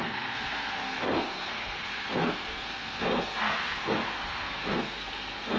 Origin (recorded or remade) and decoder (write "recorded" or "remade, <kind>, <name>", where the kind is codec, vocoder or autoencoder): remade, codec, SNAC